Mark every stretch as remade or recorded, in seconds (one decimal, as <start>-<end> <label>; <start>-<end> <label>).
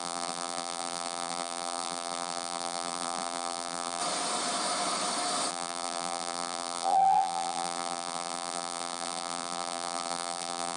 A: 0.0-4.0 remade; 4.0-5.5 recorded; 5.5-10.8 remade